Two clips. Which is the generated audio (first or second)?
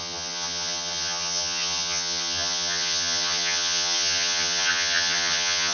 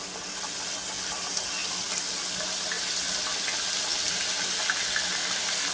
first